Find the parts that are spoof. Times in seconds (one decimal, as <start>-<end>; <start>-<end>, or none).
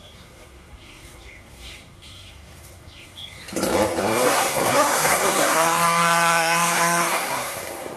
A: 0.0-3.4; 4.0-8.0